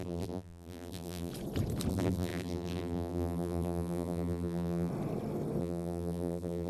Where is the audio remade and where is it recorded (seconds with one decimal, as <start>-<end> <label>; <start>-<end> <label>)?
0.0-1.3 remade; 1.3-1.9 recorded; 1.9-4.9 remade; 4.9-5.6 recorded; 5.6-6.7 remade